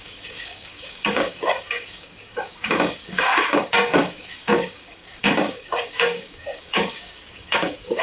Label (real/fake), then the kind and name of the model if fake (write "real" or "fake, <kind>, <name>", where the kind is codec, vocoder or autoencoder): fake, codec, DAC